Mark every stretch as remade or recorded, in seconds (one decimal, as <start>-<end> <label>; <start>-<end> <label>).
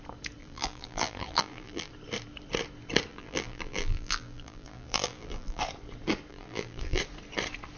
0.0-0.4 recorded; 0.4-1.9 remade; 1.9-3.1 recorded; 3.1-5.6 remade; 5.6-6.3 recorded; 6.3-7.0 remade; 7.0-7.8 recorded